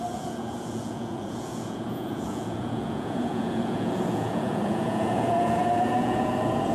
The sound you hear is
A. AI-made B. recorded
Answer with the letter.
A